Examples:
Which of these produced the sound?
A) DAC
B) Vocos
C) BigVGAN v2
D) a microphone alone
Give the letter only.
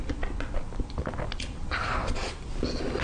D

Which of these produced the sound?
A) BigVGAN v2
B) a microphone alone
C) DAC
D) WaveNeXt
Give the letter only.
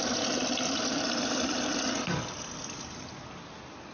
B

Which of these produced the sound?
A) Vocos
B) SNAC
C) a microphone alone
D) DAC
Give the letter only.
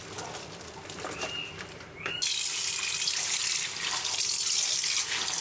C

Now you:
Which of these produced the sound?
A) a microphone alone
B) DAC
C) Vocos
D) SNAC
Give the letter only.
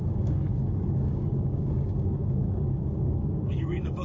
B